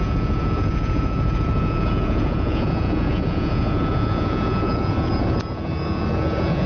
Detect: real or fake fake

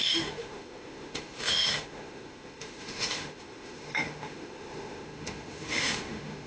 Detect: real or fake fake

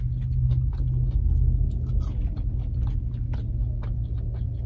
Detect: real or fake real